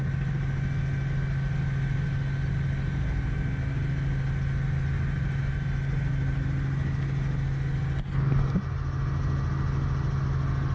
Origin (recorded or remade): recorded